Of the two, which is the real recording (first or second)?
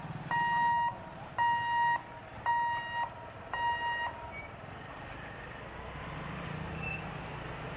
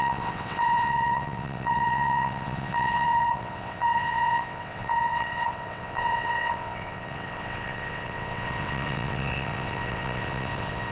first